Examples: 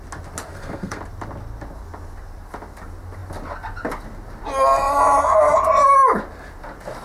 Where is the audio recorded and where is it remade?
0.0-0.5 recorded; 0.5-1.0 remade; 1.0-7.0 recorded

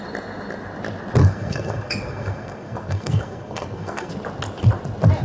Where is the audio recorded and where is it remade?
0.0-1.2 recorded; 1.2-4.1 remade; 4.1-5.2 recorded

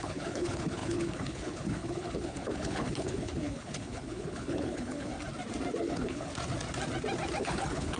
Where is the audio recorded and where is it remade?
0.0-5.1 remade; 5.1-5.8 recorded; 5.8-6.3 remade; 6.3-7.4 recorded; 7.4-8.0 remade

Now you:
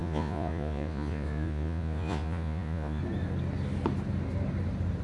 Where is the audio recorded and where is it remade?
0.0-3.0 remade; 3.0-5.0 recorded